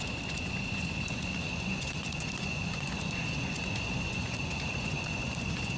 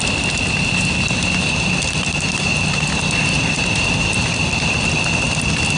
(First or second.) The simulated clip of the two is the first